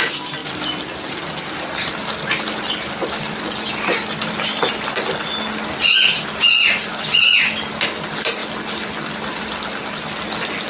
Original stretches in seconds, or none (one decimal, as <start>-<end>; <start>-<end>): 0.0-10.7